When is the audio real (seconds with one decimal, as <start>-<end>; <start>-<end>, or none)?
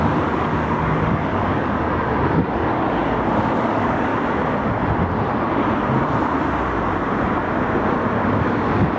3.0-3.6; 4.1-8.2